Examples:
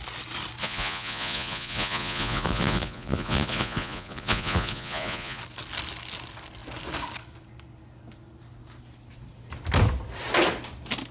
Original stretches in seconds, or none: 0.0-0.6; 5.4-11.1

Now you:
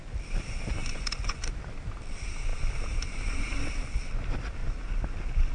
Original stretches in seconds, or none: 0.0-0.8; 1.5-5.5

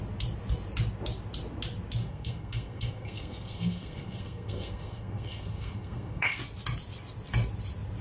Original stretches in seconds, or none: 0.0-2.0; 6.4-8.0

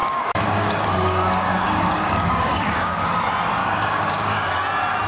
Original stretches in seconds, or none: 3.1-3.6; 4.5-5.1

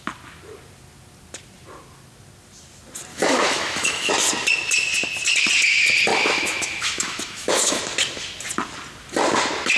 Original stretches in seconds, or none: 0.0-3.1; 4.1-6.1; 7.8-9.8